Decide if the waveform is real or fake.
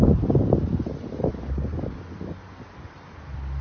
real